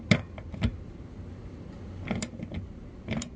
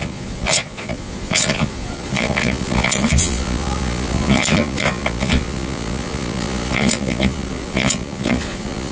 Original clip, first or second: first